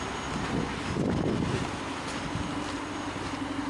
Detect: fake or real real